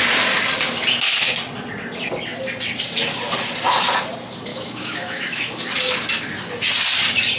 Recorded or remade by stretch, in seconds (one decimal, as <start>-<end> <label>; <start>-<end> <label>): 0.0-4.5 recorded; 4.5-5.5 remade; 5.5-7.4 recorded